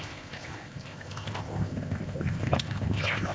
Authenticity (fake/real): fake